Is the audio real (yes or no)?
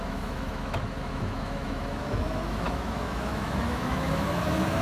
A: no